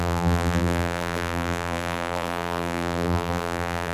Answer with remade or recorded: remade